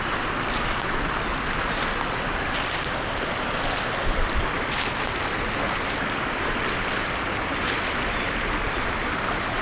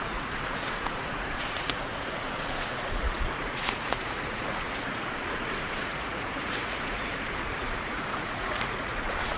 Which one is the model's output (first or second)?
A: second